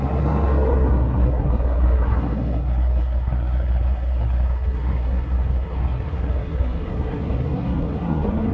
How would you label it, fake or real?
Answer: fake